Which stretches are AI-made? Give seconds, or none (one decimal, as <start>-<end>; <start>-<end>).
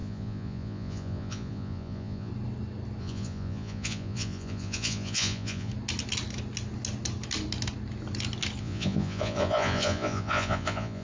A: 0.0-2.3; 3.0-5.7; 8.6-11.0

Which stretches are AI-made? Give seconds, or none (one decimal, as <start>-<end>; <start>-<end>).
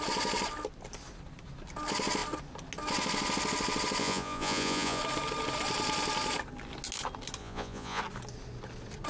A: 4.0-5.0; 7.4-8.0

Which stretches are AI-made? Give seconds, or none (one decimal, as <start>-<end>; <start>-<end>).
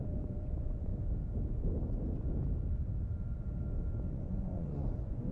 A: 0.0-0.9; 4.1-5.3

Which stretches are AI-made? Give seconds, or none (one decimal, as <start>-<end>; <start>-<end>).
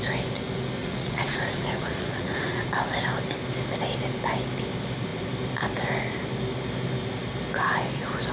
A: 0.8-2.7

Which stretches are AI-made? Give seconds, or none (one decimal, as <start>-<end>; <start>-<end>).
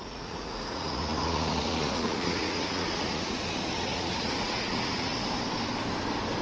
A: 0.0-5.1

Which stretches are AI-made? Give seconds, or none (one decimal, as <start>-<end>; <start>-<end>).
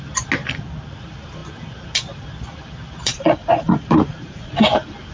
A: 3.1-4.6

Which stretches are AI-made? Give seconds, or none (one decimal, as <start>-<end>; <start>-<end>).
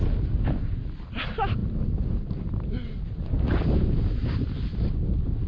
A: none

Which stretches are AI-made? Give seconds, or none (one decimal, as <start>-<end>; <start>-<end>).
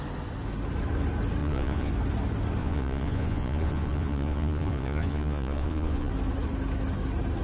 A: 1.4-1.9; 2.6-6.1